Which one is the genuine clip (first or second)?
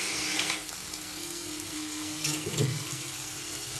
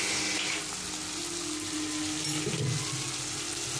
second